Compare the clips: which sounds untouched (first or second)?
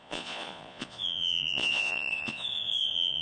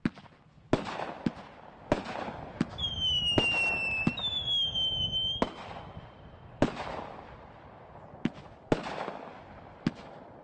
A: second